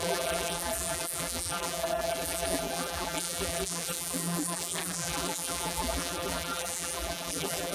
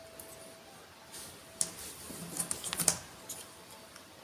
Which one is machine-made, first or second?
first